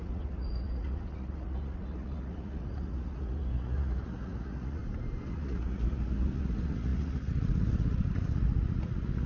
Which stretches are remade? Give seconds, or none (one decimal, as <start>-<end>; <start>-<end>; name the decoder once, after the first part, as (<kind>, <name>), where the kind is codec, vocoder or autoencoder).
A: 0.0-4.8 (vocoder, Vocos); 5.3-9.3